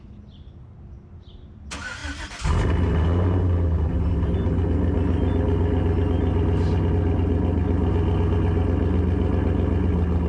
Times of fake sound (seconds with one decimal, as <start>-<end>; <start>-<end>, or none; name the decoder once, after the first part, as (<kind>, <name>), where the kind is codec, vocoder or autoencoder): none